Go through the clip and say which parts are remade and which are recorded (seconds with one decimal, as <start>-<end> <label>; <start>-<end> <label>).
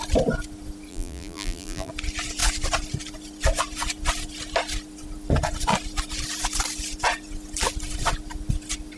0.0-0.9 recorded; 0.9-1.9 remade; 1.9-9.0 recorded